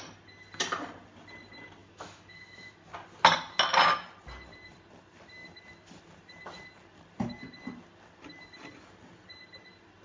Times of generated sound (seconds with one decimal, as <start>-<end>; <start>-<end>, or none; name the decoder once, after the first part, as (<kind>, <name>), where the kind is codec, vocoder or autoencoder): 1.8-2.9 (autoencoder, DAC-VAE)